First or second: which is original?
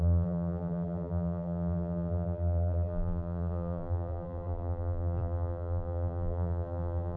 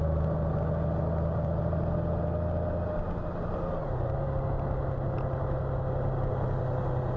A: second